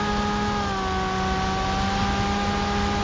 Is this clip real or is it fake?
real